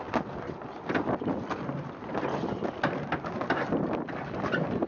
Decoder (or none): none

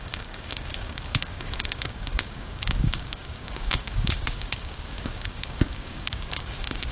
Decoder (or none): codec, DAC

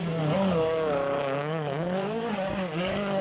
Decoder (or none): codec, DAC